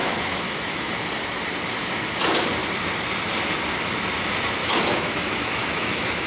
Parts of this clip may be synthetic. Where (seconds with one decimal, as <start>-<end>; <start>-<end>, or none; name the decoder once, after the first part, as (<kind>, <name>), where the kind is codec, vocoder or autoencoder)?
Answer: 0.0-0.9 (autoencoder, DAC-VAE); 4.6-6.3